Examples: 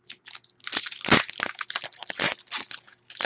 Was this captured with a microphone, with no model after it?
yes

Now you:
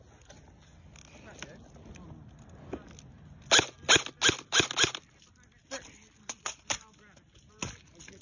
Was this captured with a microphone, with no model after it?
yes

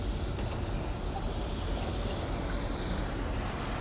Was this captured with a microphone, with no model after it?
yes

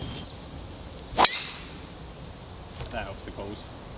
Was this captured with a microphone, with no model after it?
yes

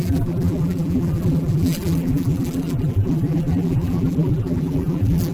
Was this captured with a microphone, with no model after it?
no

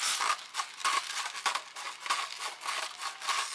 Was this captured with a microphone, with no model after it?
yes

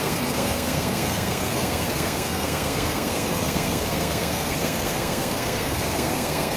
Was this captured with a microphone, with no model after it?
no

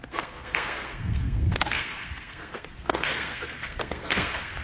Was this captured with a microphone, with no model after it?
no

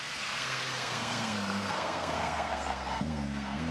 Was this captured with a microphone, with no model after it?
no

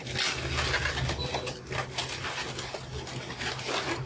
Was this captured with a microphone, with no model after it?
yes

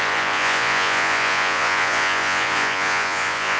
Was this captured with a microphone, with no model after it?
no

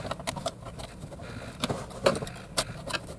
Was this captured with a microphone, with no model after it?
yes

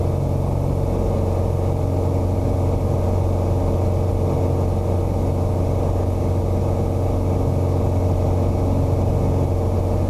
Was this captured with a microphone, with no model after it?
yes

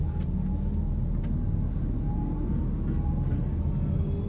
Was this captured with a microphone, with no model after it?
yes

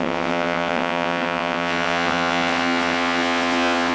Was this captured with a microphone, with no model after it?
no